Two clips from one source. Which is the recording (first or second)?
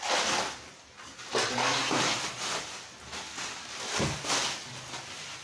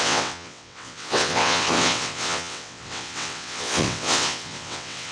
first